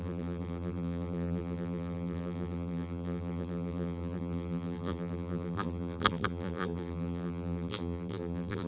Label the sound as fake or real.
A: fake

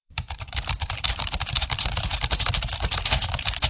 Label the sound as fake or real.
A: fake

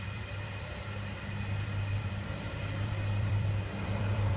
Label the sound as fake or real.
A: fake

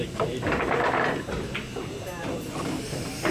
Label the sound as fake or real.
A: fake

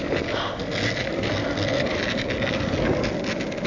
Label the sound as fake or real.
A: real